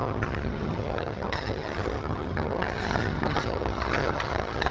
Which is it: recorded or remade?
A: remade